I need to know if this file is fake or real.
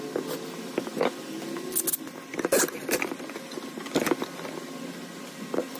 real